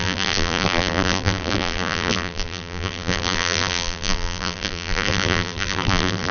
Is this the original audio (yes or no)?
no